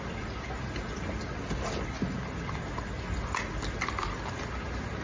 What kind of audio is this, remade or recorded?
recorded